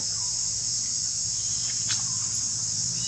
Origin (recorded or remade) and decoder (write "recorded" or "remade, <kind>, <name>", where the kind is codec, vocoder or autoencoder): recorded